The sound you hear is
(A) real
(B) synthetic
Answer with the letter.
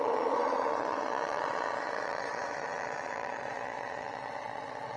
B